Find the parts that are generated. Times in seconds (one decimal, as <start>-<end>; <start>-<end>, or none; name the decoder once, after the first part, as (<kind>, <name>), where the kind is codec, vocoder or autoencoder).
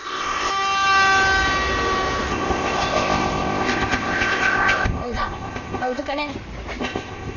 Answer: 0.0-0.5 (codec, ZipCodec); 2.3-6.3; 6.8-7.4